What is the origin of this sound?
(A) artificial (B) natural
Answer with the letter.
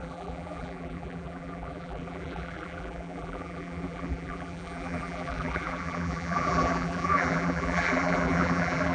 A